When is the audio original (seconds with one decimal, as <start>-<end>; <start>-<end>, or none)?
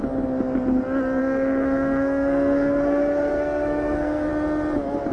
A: 0.0-1.2; 4.3-5.1